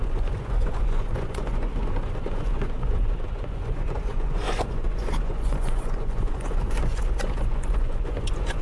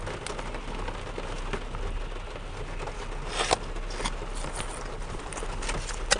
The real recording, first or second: second